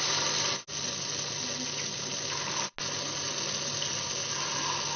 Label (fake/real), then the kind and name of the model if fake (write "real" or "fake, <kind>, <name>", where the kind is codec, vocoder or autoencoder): real